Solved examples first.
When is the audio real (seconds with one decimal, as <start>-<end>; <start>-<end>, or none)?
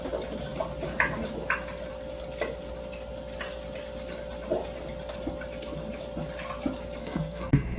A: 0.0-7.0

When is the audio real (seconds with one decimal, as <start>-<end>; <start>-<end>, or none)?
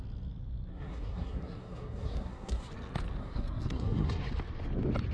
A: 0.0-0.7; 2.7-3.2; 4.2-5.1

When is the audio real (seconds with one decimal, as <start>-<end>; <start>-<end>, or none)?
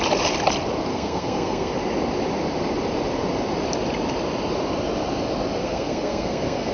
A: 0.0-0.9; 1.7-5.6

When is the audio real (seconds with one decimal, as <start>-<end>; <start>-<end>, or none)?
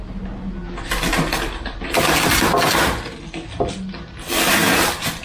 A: 0.0-5.2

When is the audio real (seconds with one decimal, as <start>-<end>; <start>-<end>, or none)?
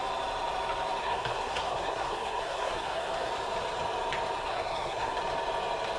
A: 0.0-1.0; 3.3-4.4; 5.2-6.0